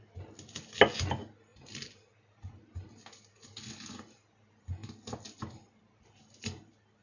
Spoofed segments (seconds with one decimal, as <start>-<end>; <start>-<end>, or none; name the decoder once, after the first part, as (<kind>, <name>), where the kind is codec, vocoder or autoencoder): 1.5-2.7 (vocoder, BigVGAN v2)